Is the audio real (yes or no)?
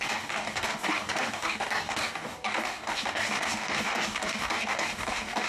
no